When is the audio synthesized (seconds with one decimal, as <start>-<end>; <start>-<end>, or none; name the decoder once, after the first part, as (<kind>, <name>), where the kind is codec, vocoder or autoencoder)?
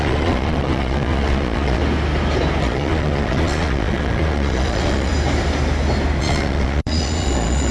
0.0-1.8 (vocoder, Vocos); 2.6-5.1; 6.2-7.7